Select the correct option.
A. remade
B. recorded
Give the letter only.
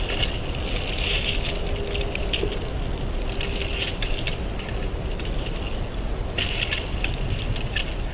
B